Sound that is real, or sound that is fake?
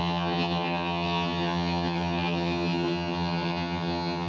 fake